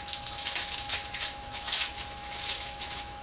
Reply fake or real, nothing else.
fake